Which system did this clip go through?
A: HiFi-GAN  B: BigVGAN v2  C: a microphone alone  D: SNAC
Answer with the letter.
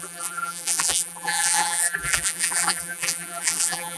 B